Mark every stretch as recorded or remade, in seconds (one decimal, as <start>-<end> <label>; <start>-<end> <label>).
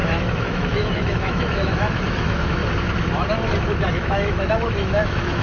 0.0-2.6 remade; 2.6-3.9 recorded; 3.9-5.4 remade